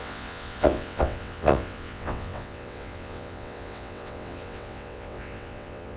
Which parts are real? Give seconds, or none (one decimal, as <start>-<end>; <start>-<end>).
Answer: none